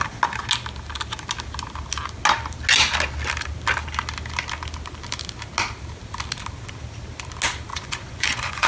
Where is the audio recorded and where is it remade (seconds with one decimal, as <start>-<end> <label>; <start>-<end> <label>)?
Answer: 0.0-7.7 recorded; 7.7-8.7 remade